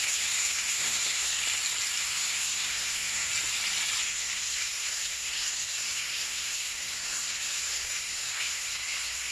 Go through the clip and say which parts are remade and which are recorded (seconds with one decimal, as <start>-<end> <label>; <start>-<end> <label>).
0.0-1.4 remade; 1.4-2.0 recorded; 2.0-3.3 remade; 3.3-4.0 recorded; 4.0-9.3 remade